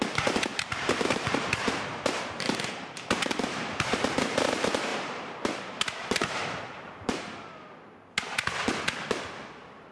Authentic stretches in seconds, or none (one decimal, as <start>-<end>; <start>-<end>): 0.0-0.5; 4.5-4.9; 7.3-9.9